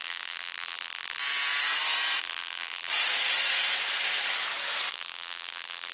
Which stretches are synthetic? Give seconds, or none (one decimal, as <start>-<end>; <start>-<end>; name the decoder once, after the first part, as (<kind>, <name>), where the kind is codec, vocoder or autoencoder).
0.0-1.2 (vocoder, BigVGAN v2); 2.2-2.9; 4.9-5.9